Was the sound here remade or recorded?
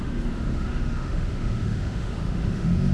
remade